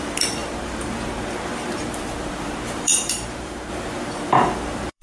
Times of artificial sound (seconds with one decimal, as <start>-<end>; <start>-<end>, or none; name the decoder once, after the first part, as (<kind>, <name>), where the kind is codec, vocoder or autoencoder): 0.0-5.0 (vocoder, BigVGAN v2)